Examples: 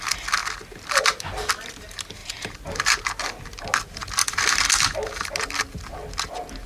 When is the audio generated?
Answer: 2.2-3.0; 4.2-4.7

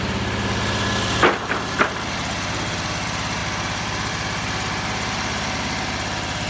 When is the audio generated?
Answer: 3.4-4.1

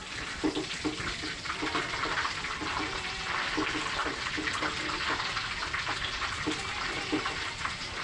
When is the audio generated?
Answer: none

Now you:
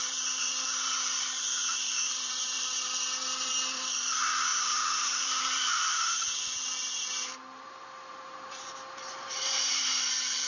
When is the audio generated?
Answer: 0.0-10.5

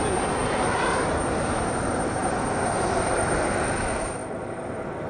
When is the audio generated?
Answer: 0.4-3.5; 4.2-5.1